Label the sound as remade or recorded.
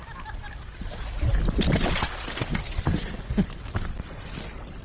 recorded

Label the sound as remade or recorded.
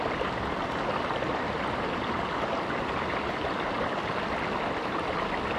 recorded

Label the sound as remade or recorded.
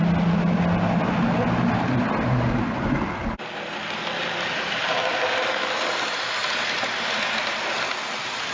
recorded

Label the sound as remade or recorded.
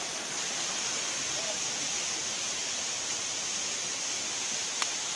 recorded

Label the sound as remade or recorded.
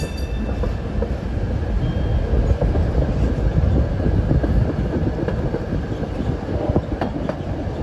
recorded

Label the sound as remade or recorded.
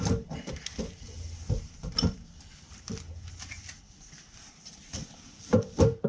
remade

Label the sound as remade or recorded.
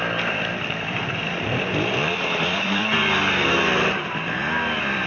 remade